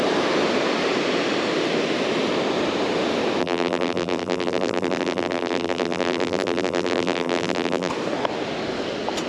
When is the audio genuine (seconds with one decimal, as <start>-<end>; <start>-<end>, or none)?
0.0-3.4; 7.9-9.3